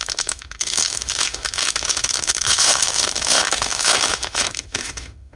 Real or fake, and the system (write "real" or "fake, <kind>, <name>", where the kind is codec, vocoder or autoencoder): fake, autoencoder, DAC-VAE